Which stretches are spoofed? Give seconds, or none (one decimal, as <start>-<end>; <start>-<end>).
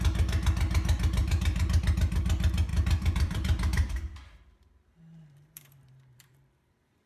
1.2-1.8; 2.7-7.1